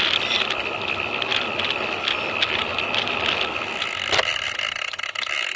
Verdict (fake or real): real